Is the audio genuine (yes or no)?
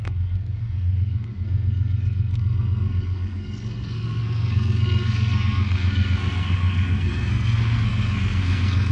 no